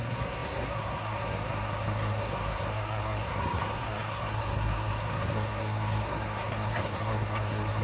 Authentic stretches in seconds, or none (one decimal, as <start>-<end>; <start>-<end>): none